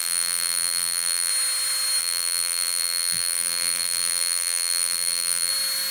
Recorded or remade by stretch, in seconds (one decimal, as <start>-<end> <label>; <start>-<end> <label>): 0.0-1.3 remade; 1.3-2.0 recorded; 2.0-5.5 remade; 5.5-5.9 recorded